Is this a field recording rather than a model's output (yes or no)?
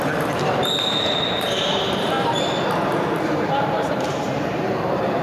no